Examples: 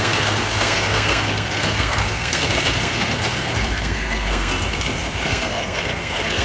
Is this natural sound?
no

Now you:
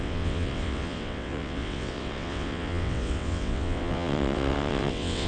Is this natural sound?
no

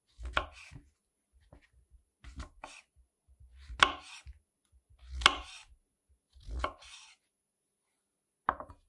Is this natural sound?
yes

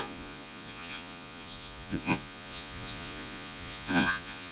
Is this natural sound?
no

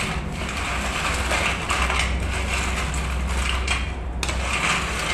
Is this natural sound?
yes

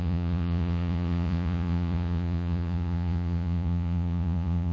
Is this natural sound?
no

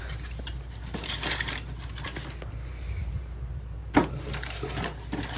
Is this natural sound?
yes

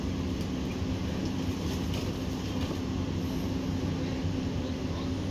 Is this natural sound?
yes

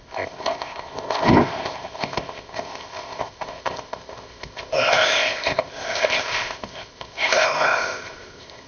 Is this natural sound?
no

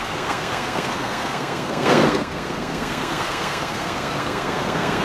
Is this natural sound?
no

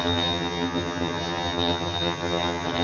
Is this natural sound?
no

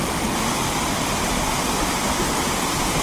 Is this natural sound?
no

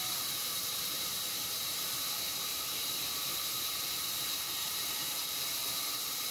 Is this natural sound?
no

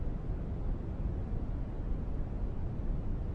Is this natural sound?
yes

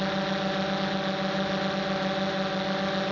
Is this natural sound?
yes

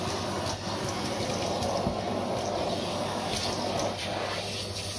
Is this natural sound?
yes